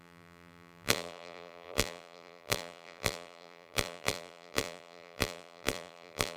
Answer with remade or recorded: remade